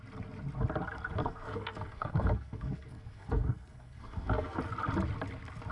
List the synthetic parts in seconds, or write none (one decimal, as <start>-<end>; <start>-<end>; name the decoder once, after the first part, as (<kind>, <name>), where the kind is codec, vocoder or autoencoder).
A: 1.2-4.6 (codec, SNAC)